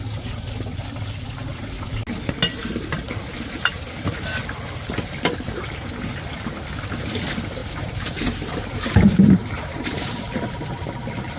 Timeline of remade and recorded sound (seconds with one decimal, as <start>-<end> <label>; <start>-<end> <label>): 0.0-7.6 recorded; 7.6-10.4 remade; 10.4-11.4 recorded